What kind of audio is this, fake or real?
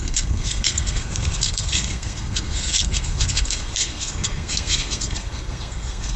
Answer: fake